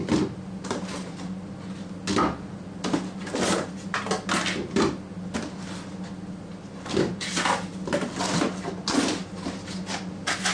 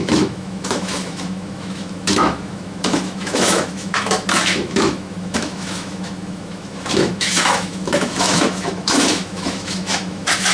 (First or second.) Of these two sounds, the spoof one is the second